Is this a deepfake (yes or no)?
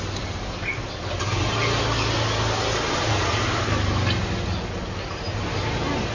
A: no